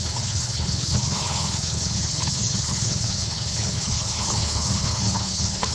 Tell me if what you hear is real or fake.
fake